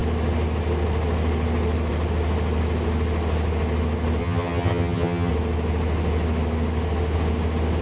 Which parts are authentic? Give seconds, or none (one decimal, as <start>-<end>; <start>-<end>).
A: 0.0-4.2; 5.3-7.8